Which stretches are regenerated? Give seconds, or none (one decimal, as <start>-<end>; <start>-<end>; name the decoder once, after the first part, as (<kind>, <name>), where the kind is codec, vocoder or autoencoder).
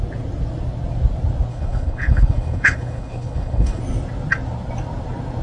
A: 1.5-3.8 (codec, HILCodec)